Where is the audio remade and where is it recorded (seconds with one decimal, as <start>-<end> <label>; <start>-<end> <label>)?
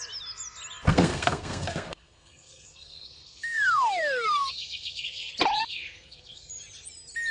0.0-0.9 recorded; 0.9-5.3 remade; 5.3-5.7 recorded; 5.7-6.5 remade; 6.5-7.3 recorded